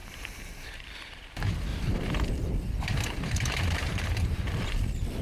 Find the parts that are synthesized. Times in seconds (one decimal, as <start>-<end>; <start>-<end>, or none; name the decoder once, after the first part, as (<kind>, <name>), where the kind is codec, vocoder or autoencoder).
0.0-1.2 (vocoder, BigVGAN v2); 1.7-4.4